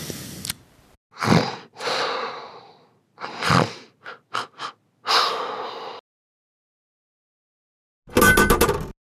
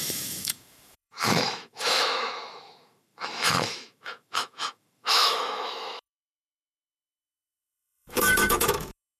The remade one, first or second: second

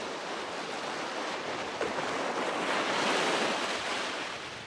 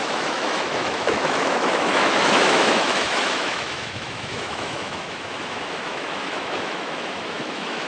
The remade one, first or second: second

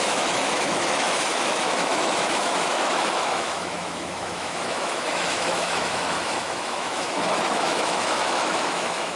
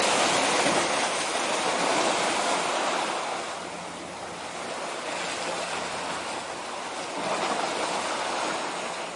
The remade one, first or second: first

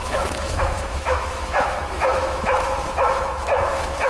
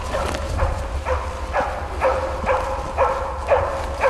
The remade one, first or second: first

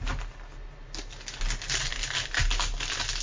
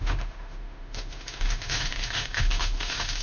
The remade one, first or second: second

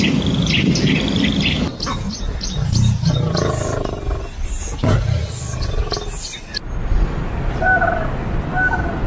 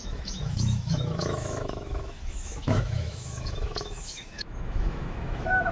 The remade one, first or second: second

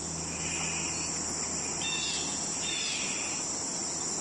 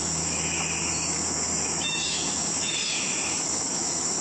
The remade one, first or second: second